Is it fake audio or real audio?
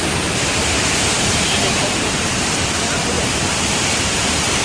fake